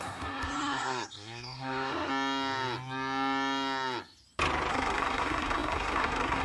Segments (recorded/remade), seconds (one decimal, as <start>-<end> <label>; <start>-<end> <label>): 0.0-2.1 remade; 2.1-4.7 recorded; 4.7-6.4 remade